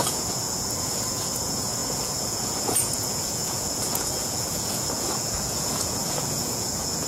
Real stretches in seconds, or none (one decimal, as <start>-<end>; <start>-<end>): none